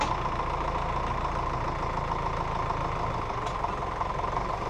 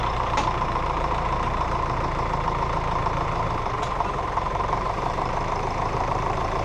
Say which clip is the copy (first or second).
second